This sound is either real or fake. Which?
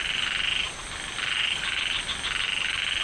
real